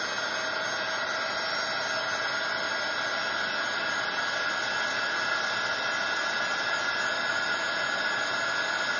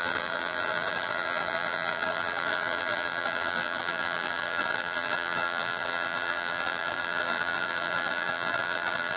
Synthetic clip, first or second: second